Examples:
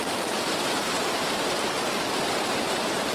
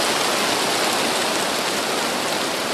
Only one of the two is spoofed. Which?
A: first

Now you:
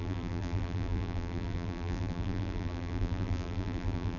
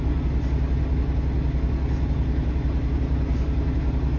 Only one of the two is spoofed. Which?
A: first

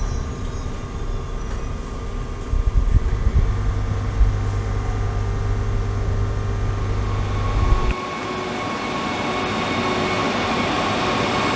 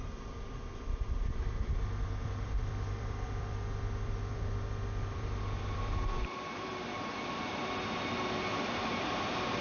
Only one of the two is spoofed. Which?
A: second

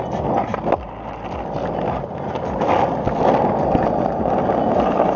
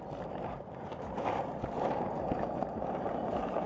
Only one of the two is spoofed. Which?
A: second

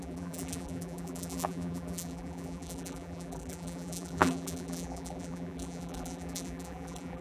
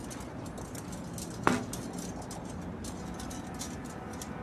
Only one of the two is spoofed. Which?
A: first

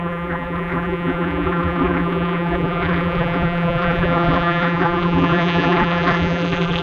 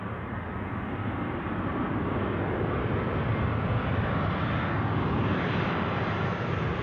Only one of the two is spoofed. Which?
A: first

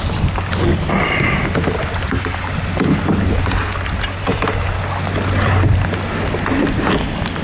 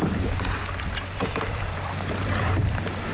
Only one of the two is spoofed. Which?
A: second